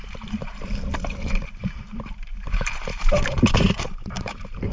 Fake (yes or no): yes